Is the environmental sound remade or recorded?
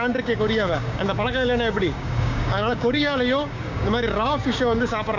remade